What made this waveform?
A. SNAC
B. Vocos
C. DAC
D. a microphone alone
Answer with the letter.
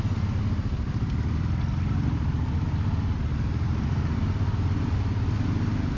D